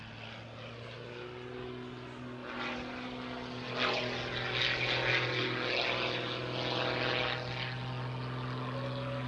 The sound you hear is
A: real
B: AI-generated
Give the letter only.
A